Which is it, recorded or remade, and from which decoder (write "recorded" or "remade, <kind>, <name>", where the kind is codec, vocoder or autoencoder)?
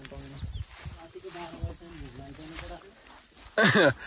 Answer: recorded